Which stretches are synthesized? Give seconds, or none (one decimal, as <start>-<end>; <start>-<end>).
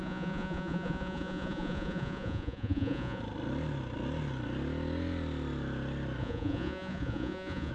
0.0-3.2; 6.2-7.7